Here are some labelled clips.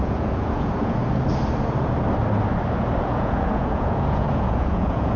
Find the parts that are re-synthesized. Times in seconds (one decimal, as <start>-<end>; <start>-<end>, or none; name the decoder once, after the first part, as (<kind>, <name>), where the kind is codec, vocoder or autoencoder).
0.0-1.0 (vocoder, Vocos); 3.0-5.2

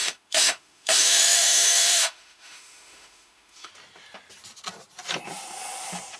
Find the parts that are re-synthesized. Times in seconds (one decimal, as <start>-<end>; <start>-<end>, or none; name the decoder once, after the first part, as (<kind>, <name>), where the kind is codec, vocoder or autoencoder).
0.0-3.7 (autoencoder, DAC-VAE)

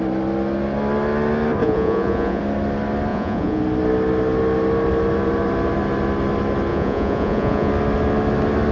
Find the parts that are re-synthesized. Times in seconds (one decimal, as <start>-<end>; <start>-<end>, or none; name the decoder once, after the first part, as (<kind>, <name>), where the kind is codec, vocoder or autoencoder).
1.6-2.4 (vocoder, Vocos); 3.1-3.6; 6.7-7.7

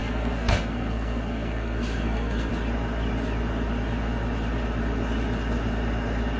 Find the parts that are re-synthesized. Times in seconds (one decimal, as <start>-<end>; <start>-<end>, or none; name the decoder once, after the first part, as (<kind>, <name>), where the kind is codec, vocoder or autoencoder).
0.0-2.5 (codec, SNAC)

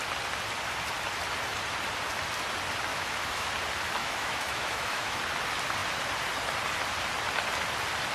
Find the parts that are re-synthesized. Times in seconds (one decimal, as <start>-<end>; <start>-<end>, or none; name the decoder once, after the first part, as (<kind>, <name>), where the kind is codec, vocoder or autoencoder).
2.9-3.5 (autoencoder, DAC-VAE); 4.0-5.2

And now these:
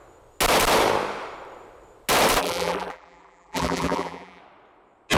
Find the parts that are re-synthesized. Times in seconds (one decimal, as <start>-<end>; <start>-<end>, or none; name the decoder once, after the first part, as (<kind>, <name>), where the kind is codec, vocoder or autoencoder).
2.4-4.4 (vocoder, BigVGAN v2)

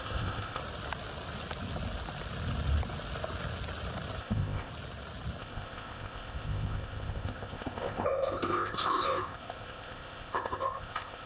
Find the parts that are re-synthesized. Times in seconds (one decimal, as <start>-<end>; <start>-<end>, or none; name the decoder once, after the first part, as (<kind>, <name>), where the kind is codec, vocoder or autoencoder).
0.0-0.6 (codec, ZipCodec); 4.2-4.7; 5.4-11.3